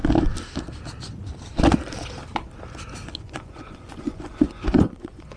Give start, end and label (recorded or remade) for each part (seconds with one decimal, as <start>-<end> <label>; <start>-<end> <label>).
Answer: 0.0-3.2 recorded; 3.2-5.4 remade